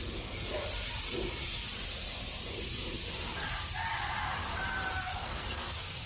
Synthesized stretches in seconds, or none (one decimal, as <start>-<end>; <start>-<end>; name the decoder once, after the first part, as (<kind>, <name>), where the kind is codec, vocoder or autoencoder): 5.1-6.1 (codec, SNAC)